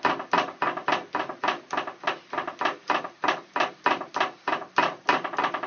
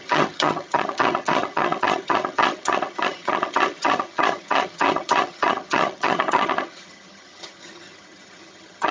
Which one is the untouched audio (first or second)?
first